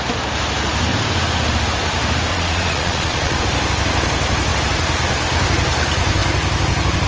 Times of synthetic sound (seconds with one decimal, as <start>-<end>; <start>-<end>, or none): 2.3-3.4